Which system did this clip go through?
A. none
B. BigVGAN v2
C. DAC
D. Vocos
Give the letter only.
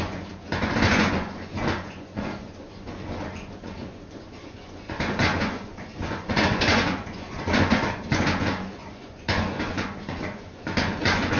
D